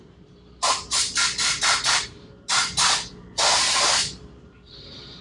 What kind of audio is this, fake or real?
fake